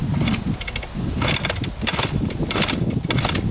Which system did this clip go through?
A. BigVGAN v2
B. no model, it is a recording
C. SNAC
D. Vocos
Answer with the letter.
B